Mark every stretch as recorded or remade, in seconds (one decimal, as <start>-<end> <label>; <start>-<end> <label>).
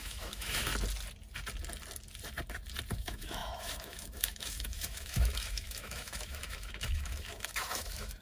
0.0-0.7 remade; 0.7-2.9 recorded; 2.9-8.2 remade